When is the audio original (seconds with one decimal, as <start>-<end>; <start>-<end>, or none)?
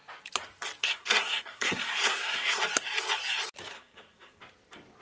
0.0-0.8; 2.6-3.7; 4.4-5.0